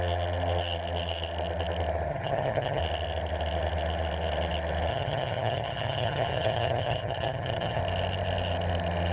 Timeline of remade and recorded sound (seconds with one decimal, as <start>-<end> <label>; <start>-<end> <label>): 0.0-2.1 recorded; 2.1-2.8 remade; 2.8-4.9 recorded; 4.9-7.8 remade; 7.8-9.1 recorded